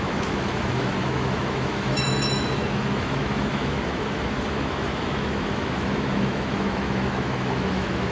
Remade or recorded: remade